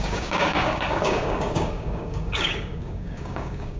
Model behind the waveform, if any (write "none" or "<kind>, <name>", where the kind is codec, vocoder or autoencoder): codec, DAC